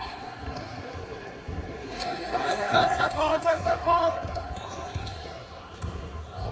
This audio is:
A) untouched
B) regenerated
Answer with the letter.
B